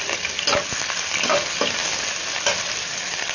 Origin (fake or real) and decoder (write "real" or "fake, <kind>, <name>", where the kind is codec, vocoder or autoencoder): real